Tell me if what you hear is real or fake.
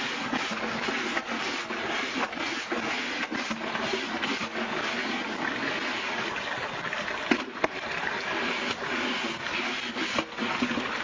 real